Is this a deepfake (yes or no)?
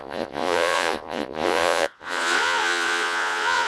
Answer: yes